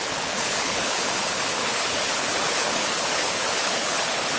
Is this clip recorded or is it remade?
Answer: remade